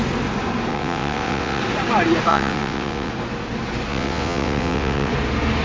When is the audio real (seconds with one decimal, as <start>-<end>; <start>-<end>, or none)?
0.0-0.7; 1.6-2.3; 3.1-3.9; 5.1-5.6